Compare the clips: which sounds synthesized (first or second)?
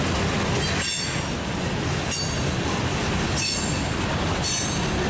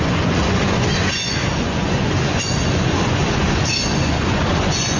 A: second